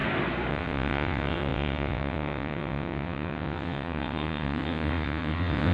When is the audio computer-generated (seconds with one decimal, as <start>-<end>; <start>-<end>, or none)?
0.5-5.7